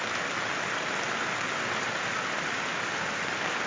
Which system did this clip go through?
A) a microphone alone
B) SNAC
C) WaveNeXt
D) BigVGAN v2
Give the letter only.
A